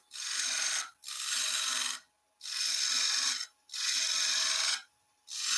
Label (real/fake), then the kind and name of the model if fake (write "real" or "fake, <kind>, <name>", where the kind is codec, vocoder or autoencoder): real